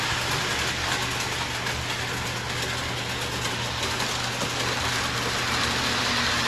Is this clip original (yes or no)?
yes